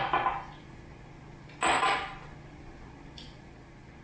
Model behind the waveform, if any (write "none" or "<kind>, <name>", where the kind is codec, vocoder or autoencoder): none